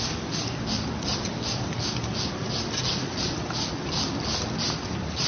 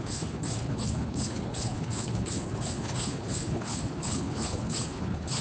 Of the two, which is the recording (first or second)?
first